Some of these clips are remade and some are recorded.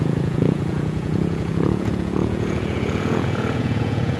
remade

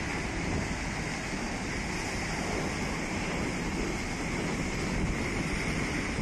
recorded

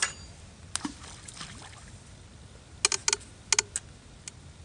recorded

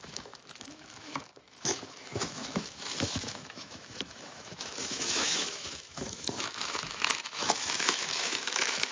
remade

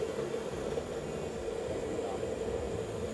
recorded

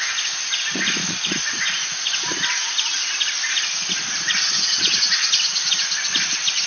recorded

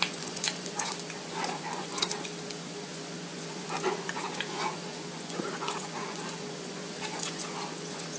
remade